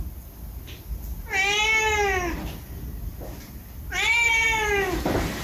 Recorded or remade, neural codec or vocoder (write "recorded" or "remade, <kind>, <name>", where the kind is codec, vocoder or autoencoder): recorded